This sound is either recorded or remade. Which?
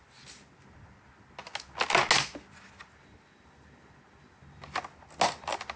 recorded